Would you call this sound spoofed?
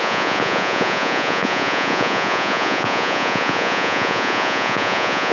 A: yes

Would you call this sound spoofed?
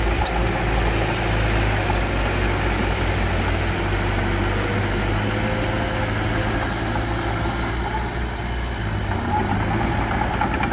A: no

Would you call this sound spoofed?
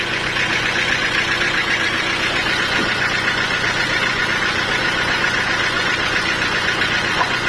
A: yes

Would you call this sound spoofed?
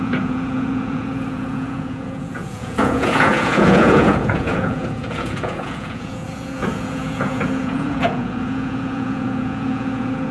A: yes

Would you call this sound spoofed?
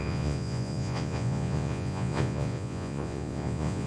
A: yes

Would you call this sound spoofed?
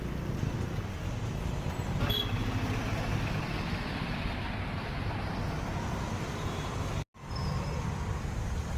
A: no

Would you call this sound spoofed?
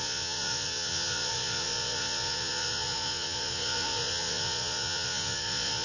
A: yes